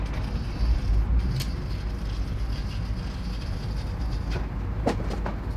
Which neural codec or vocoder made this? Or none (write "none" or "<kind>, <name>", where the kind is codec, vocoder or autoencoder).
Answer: none